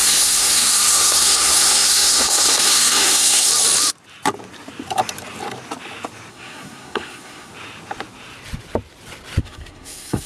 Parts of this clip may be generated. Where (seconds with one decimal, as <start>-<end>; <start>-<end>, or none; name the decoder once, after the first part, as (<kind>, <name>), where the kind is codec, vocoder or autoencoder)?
0.0-3.5 (codec, SNAC); 6.3-7.5; 9.4-10.3